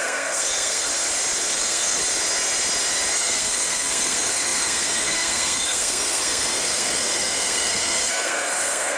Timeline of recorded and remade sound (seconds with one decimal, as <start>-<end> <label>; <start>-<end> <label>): 0.0-0.9 remade; 0.9-1.5 recorded; 1.5-2.0 remade; 2.0-3.1 recorded; 3.1-9.0 remade